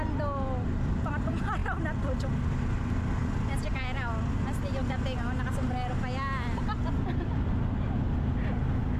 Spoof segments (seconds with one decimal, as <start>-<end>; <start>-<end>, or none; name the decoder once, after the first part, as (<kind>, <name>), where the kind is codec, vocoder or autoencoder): none